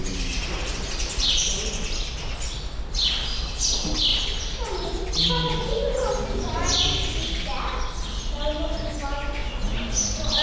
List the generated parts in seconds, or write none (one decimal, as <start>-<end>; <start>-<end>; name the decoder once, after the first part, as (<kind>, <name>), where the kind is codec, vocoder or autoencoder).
none